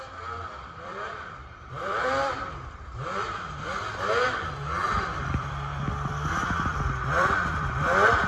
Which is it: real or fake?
fake